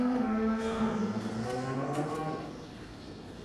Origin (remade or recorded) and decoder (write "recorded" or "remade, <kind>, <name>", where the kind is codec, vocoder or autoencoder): remade, codec, SNAC